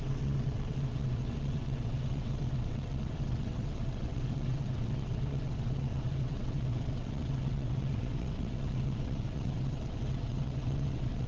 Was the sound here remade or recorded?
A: remade